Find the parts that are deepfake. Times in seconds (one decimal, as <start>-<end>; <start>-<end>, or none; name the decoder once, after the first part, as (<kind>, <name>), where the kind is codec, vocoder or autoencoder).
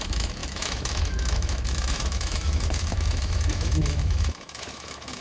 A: 0.0-5.2 (autoencoder, DAC-VAE)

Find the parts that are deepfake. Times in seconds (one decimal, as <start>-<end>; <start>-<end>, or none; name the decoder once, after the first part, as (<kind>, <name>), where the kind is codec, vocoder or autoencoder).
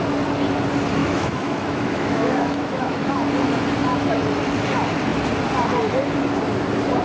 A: 1.0-3.1 (autoencoder, DAC-VAE)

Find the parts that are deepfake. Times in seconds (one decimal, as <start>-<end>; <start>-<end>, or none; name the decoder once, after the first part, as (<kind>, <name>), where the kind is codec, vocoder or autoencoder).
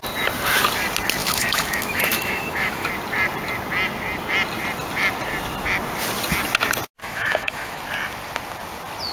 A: 1.2-2.9 (autoencoder, DAC-VAE); 7.0-7.8